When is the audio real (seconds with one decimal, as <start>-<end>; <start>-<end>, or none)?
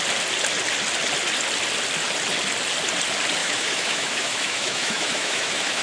0.0-3.4